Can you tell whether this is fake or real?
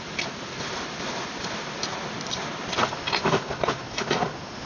real